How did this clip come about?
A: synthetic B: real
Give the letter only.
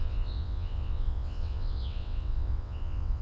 A